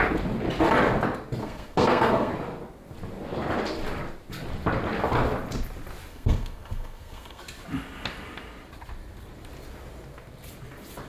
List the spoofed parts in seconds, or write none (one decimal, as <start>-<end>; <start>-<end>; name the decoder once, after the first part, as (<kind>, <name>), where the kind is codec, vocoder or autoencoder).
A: 1.4-2.3 (codec, SNAC); 6.1-7.4